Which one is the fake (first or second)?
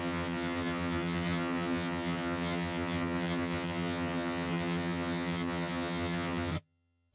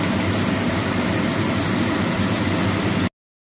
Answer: first